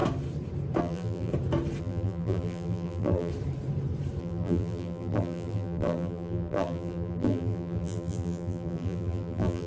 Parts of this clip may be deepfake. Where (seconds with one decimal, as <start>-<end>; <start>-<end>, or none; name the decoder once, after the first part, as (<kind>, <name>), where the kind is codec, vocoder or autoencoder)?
0.8-1.3 (vocoder, BigVGAN v2); 1.8-3.3; 4.2-9.7